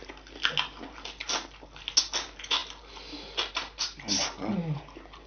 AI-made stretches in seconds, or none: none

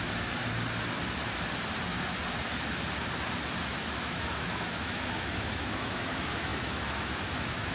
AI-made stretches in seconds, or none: 0.0-0.4 (autoencoder, DAC-VAE); 3.7-7.7

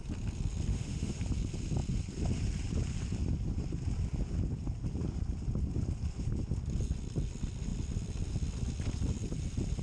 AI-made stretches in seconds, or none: 0.7-1.2 (autoencoder, DAC-VAE)

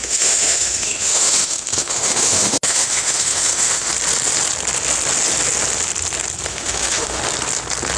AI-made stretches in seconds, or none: 0.0-3.9 (autoencoder, DAC-VAE); 6.5-7.2

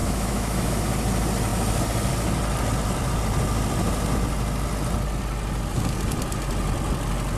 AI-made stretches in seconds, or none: 0.0-0.8 (autoencoder, DAC-VAE)

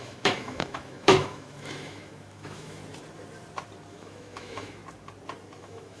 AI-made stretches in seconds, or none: 0.0-2.8 (autoencoder, DAC-VAE); 3.9-4.8; 5.6-6.0